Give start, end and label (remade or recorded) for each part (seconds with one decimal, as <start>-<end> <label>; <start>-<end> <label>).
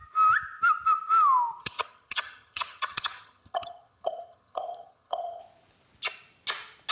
0.0-1.6 recorded; 1.6-5.4 remade; 5.4-6.9 recorded